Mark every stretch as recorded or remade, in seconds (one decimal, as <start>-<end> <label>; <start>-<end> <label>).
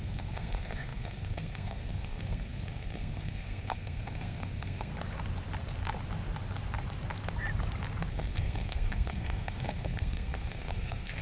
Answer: 0.0-4.9 remade; 4.9-8.1 recorded; 8.1-11.2 remade